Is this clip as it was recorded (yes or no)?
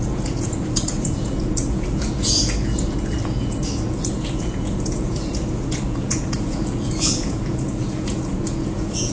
no